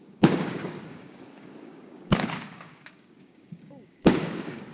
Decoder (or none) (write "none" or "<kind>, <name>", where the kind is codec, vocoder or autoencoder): codec, DAC